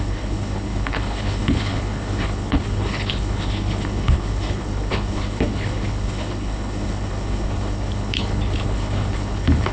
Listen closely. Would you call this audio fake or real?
fake